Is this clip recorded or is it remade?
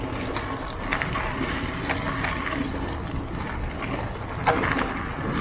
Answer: recorded